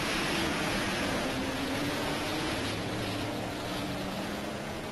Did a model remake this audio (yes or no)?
yes